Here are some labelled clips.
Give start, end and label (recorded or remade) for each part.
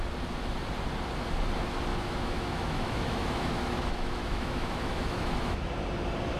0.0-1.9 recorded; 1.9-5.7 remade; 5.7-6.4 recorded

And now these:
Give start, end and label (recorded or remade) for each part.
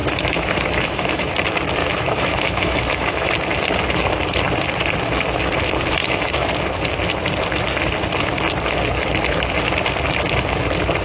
0.0-1.3 remade; 1.3-1.8 recorded; 1.8-3.3 remade; 3.3-6.0 recorded; 6.0-6.5 remade; 6.5-11.0 recorded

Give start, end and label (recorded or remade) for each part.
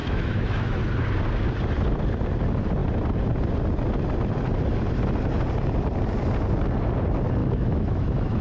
0.0-0.8 remade; 0.8-7.4 recorded; 7.4-8.4 remade